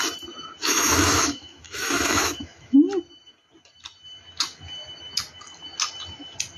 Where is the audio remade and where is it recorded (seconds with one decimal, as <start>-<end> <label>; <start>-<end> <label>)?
0.0-0.6 recorded; 0.6-2.7 remade; 2.7-6.6 recorded